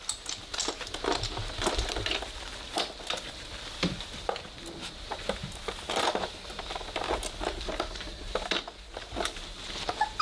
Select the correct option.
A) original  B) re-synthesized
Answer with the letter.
A